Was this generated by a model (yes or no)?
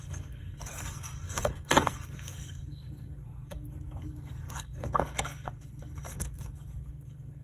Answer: yes